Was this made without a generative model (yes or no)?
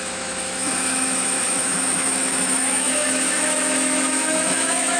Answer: no